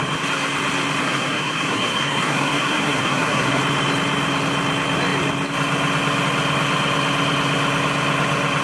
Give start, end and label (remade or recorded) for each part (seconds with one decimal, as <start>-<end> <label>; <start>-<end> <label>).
0.0-1.0 recorded; 1.0-3.6 remade; 3.6-8.6 recorded